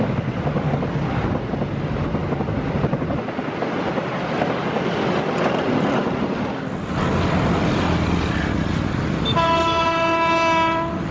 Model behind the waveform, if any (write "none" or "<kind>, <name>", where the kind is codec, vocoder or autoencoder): none